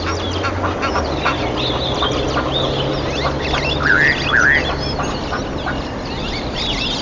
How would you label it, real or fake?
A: real